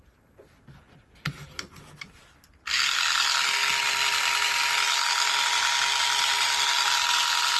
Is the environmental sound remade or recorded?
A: recorded